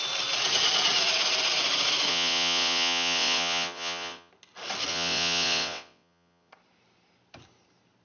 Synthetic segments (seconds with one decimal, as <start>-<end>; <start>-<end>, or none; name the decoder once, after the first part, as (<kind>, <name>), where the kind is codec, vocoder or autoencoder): 2.1-4.3 (vocoder, WaveNeXt); 4.9-6.5